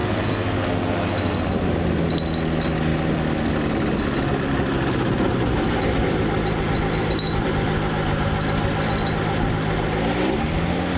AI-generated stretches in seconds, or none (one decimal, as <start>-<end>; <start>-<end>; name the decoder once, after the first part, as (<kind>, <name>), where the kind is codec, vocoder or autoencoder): none